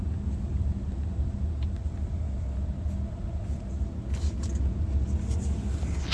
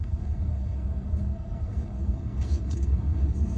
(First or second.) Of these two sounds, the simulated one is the second